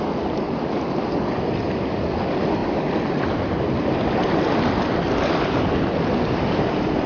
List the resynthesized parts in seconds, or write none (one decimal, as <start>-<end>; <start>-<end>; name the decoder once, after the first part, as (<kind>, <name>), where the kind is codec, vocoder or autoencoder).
none